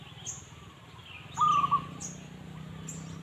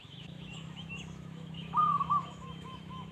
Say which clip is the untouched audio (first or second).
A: first